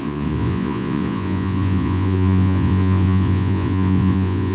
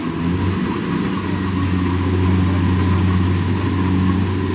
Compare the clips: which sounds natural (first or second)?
second